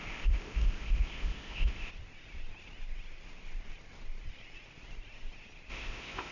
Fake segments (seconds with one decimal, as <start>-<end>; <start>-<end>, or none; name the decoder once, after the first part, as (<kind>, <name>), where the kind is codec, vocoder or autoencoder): 0.0-1.9 (codec, ZipCodec); 5.7-6.3